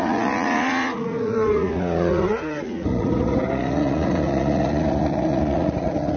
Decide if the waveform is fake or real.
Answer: fake